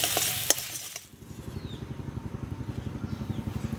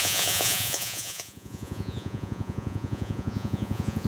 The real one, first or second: first